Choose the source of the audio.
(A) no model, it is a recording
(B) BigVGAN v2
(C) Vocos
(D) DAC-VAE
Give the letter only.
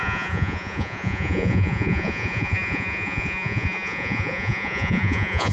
C